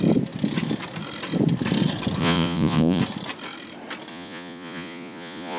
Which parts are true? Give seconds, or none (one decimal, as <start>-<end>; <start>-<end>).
0.0-2.2; 3.0-4.1